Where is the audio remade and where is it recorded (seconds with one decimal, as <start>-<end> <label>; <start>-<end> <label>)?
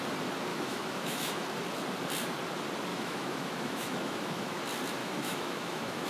0.0-0.5 recorded; 0.5-1.5 remade; 1.5-2.9 recorded; 2.9-4.6 remade; 4.6-5.0 recorded; 5.0-6.1 remade